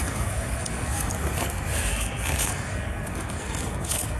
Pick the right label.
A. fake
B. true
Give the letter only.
A